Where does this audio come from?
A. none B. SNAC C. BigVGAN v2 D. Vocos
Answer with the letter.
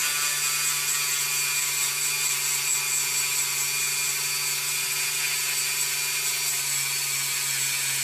A